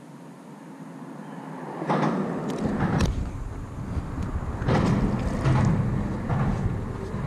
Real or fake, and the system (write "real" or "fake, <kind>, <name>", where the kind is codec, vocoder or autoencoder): real